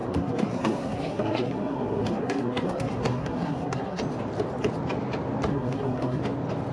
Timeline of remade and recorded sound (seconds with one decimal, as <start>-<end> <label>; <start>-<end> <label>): 0.0-4.0 remade; 4.0-5.5 recorded; 5.5-6.2 remade; 6.2-6.7 recorded